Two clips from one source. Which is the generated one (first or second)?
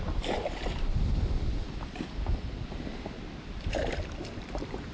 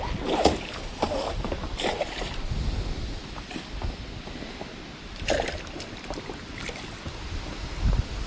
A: first